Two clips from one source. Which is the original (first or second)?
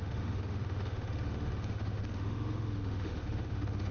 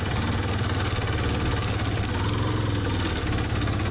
second